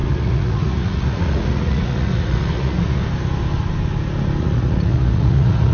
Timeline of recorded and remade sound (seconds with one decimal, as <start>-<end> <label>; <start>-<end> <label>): 0.0-3.0 remade; 3.0-4.4 recorded; 4.4-5.7 remade